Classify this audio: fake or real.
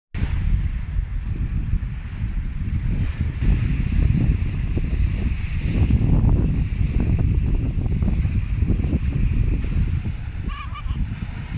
real